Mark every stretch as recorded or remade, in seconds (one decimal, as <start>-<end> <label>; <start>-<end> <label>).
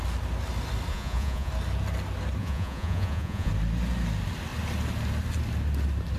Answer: 0.0-0.9 recorded; 0.9-1.5 remade; 1.5-2.4 recorded; 2.4-3.5 remade; 3.5-6.2 recorded